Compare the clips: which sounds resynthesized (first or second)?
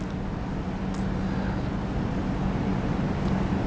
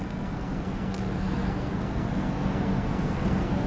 second